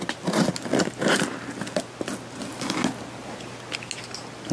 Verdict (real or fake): real